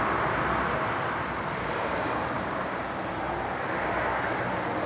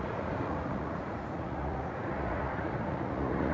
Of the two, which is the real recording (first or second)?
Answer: first